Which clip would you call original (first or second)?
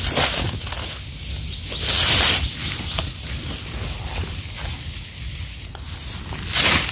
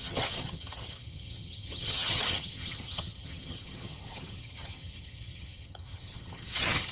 first